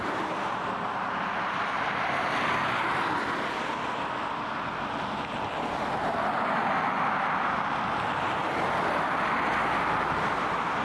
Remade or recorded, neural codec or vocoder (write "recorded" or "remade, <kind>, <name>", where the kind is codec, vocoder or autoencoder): recorded